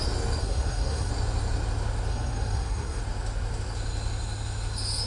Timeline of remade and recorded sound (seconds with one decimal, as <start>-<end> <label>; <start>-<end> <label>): 0.0-0.4 recorded; 0.4-1.1 remade; 1.1-2.1 recorded; 2.1-3.0 remade; 3.0-5.1 recorded